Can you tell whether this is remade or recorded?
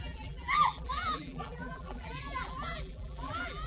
remade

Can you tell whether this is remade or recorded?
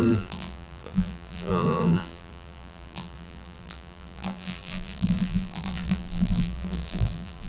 remade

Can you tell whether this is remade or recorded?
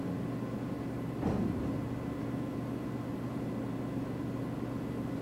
recorded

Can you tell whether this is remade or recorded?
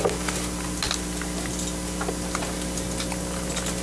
recorded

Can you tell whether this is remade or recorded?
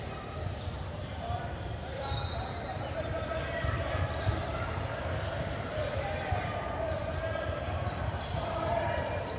remade